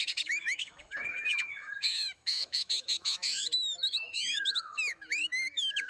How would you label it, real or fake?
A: fake